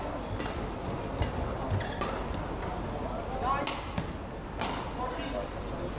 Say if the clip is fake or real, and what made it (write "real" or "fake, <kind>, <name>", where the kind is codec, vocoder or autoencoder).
real